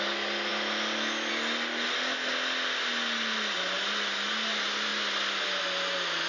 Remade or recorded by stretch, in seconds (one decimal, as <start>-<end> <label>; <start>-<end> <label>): 0.0-6.3 recorded